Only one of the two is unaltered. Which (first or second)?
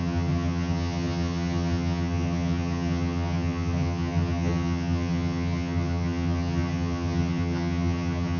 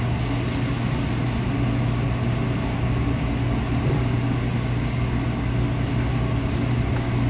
second